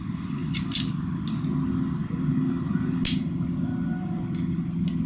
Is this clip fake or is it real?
real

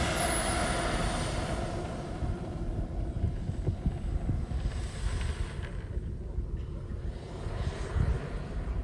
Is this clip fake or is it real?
real